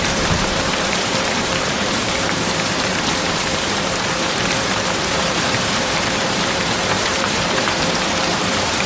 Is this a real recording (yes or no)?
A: no